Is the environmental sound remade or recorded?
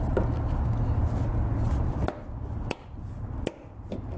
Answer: recorded